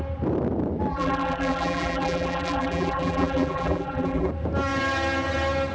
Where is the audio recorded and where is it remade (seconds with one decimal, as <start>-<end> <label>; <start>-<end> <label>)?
0.0-0.9 recorded; 0.9-4.3 remade; 4.3-5.7 recorded